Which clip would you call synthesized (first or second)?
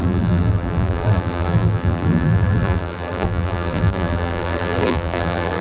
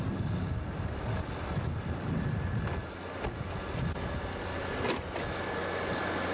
first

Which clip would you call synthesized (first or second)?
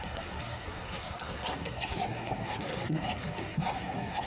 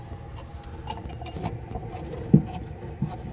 first